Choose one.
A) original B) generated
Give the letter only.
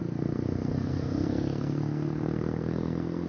B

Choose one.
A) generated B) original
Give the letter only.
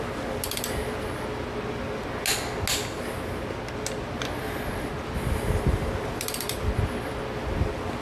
B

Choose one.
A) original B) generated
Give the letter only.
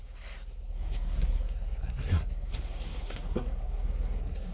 B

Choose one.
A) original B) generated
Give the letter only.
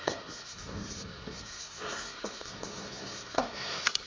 B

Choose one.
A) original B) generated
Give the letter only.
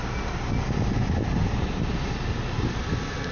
A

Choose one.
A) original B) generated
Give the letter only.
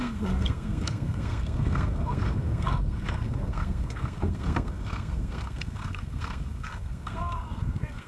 B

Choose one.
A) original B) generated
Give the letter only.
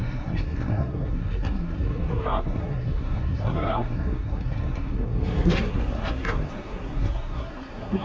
B